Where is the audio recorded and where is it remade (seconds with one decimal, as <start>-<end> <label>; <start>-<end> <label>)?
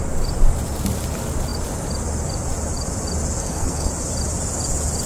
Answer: 0.0-3.4 recorded; 3.4-3.9 remade; 3.9-5.1 recorded